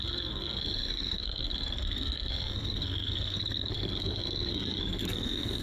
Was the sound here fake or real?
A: fake